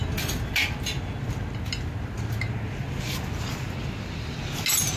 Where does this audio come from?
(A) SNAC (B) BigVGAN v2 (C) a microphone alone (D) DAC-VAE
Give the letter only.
C